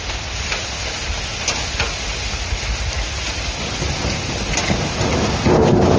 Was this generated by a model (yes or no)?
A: no